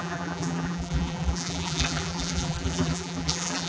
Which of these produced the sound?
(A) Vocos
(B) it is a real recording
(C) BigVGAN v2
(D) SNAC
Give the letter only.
C